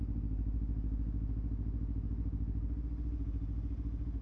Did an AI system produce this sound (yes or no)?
no